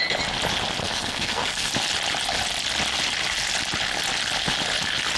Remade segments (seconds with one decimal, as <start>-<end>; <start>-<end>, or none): 0.8-1.7